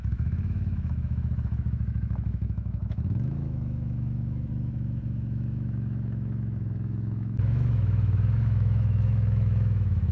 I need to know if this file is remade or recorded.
remade